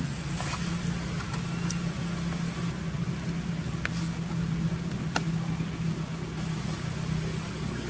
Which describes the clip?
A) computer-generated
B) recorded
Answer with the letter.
B